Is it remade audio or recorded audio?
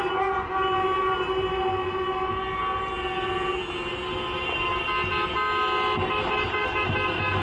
recorded